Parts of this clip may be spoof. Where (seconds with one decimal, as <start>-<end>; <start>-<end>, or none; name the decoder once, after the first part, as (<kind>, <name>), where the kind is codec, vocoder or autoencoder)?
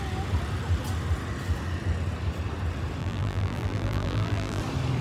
3.0-4.6 (vocoder, BigVGAN v2)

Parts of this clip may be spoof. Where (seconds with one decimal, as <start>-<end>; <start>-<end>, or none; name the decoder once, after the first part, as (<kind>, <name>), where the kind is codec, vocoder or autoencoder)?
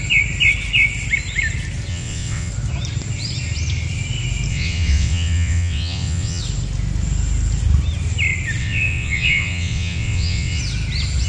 1.9-2.5 (vocoder, WaveNeXt); 4.5-6.4; 8.6-10.6